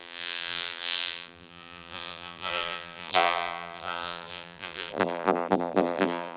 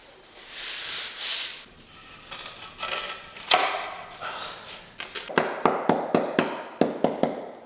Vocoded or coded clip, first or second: first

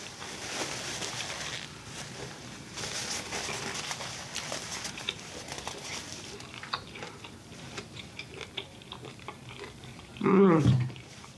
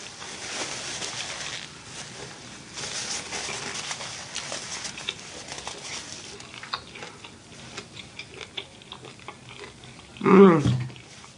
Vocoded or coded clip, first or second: first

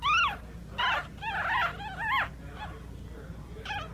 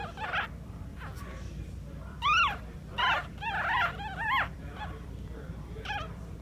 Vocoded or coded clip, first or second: second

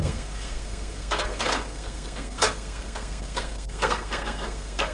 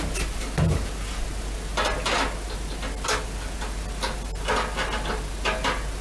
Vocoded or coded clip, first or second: first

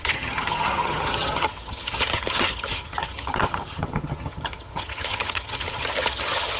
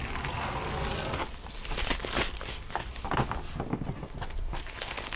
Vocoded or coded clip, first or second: first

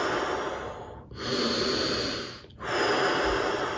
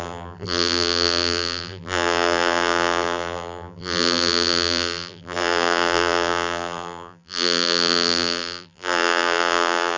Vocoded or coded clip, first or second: second